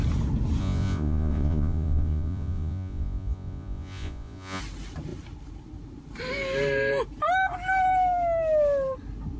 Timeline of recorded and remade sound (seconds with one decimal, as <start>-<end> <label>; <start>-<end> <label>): 0.0-0.6 recorded; 0.6-4.6 remade; 4.6-9.4 recorded